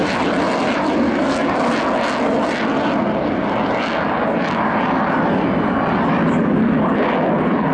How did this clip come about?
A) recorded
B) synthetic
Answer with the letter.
A